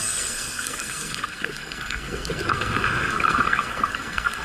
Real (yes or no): no